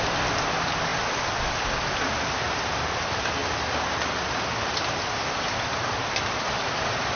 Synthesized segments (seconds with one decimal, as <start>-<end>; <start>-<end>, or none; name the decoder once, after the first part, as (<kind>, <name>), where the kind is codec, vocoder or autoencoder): 0.0-3.4 (vocoder, BigVGAN v2); 6.1-7.2